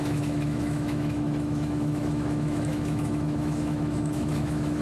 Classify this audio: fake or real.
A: fake